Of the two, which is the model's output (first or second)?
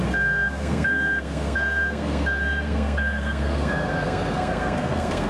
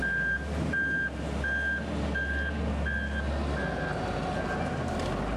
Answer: first